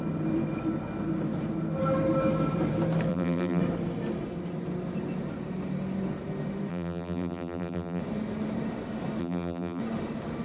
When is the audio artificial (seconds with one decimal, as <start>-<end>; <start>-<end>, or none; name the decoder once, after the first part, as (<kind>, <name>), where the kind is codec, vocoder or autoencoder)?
3.1-3.6 (vocoder, BigVGAN v2); 6.7-8.0; 9.2-9.8